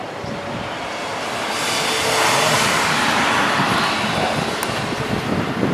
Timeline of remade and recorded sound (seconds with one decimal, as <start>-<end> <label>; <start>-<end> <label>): 0.0-5.7 recorded